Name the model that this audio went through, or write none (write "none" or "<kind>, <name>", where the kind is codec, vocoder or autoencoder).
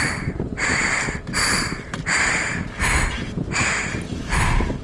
vocoder, BigVGAN v2